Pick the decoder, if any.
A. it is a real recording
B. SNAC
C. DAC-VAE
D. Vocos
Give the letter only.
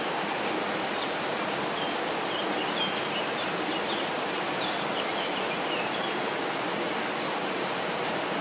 A